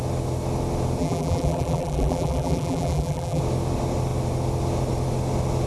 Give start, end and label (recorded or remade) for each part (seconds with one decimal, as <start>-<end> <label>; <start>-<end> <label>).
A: 0.0-1.0 recorded; 1.0-3.4 remade; 3.4-5.7 recorded